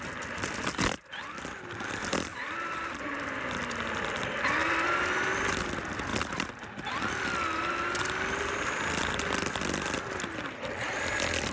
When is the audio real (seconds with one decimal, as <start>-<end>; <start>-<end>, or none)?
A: 0.0-2.3; 3.2-11.5